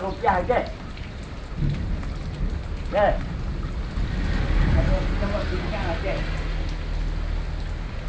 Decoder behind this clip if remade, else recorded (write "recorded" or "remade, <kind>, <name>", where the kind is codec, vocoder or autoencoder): recorded